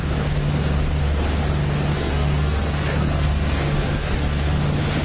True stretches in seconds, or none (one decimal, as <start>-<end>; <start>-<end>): 0.0-1.9; 4.6-5.0